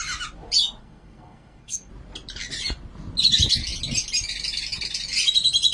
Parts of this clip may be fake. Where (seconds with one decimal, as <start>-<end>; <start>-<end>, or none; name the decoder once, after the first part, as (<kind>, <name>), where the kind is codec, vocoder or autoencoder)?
0.8-1.9 (codec, SNAC)